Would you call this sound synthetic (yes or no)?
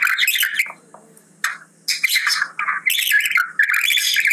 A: no